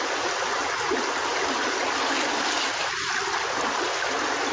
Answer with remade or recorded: recorded